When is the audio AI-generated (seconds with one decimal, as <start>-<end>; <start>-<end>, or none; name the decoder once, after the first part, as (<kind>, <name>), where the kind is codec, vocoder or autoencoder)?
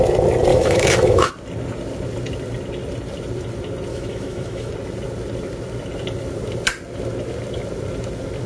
0.5-1.3 (autoencoder, DAC-VAE); 3.9-4.7